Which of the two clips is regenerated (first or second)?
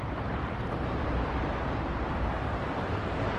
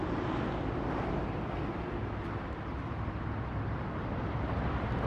first